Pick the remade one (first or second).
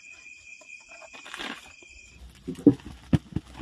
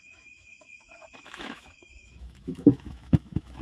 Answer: second